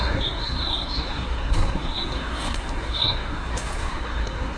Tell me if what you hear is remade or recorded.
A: remade